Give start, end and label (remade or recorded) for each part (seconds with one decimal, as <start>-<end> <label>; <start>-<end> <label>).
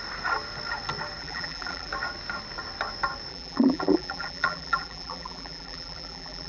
0.0-1.2 recorded; 1.2-1.9 remade; 1.9-3.3 recorded; 3.3-6.5 remade